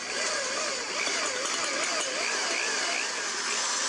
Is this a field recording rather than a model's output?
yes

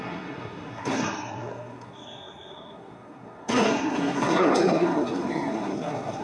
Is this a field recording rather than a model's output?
no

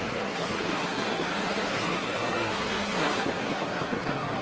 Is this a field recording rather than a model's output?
no